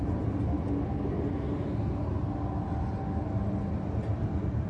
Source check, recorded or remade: recorded